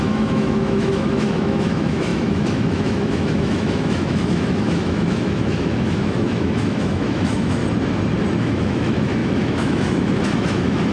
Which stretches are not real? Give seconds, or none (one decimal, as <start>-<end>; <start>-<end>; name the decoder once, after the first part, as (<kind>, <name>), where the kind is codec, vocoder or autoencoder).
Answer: 0.0-7.6 (autoencoder, DAC-VAE); 8.4-10.9